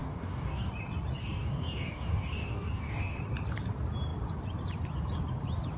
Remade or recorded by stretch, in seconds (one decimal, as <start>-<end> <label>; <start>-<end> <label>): 0.0-0.7 remade; 0.7-1.2 recorded; 1.2-3.2 remade; 3.2-5.8 recorded